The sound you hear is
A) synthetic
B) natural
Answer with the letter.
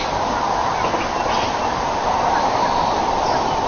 B